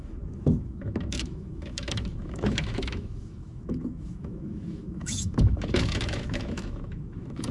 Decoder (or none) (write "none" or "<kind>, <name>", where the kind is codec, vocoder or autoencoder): autoencoder, DAC-VAE